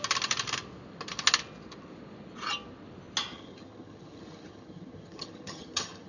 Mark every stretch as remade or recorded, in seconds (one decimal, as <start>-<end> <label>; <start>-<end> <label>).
0.0-3.3 recorded; 3.3-6.1 remade